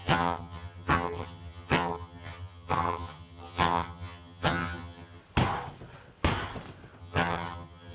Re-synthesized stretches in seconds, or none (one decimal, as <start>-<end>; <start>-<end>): 0.0-5.2; 7.0-7.9